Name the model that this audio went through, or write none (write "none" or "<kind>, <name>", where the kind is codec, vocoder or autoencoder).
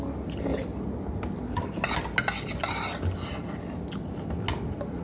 none